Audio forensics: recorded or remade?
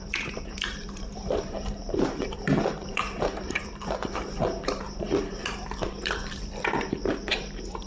remade